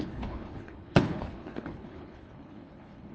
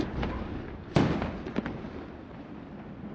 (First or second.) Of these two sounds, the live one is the second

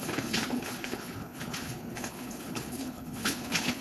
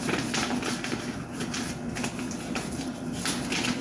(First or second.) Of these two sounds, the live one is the second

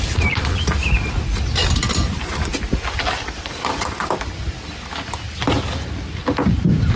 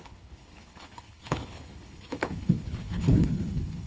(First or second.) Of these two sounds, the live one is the first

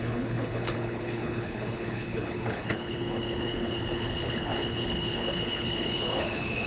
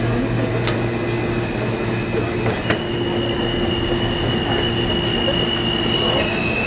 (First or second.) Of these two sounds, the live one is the second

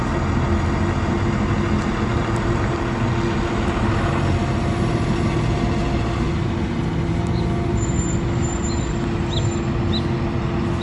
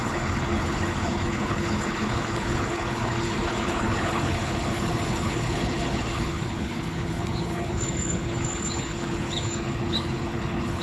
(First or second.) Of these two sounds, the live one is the first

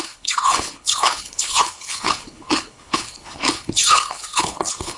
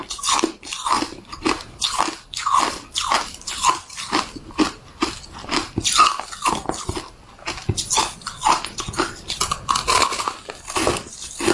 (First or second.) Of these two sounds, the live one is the second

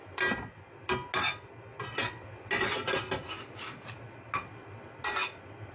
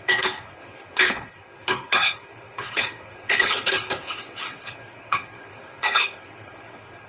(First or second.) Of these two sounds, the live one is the first